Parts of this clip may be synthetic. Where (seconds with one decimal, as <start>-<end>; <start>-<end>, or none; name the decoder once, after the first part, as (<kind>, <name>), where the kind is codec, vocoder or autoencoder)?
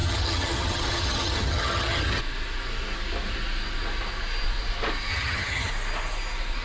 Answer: 0.0-2.2 (vocoder, HiFi-GAN); 5.1-5.7